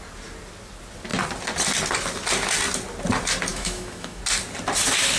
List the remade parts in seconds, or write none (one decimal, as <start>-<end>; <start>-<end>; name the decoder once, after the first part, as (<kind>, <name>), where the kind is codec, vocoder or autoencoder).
3.5-4.2 (autoencoder, DAC-VAE)